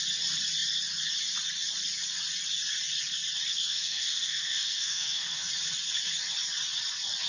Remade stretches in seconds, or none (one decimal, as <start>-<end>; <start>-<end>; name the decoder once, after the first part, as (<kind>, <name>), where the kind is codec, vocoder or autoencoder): 3.5-5.5 (codec, SNAC)